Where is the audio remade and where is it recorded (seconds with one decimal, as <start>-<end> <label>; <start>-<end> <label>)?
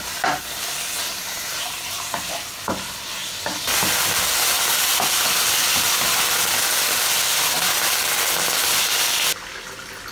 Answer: 0.0-1.2 recorded; 1.2-2.3 remade; 2.3-10.1 recorded